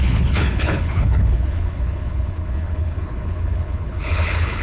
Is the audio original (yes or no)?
no